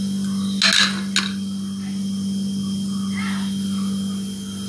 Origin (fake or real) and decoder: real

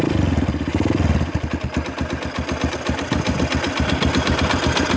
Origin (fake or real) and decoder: real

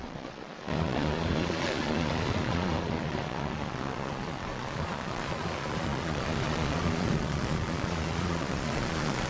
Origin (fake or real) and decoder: fake, vocoder, Vocos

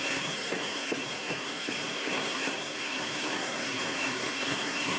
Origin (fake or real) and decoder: fake, codec, SNAC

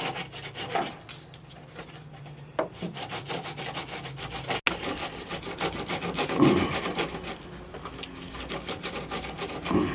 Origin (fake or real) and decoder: real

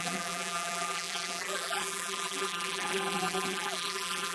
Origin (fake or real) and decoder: fake, vocoder, BigVGAN v2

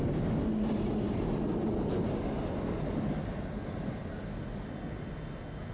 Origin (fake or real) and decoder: real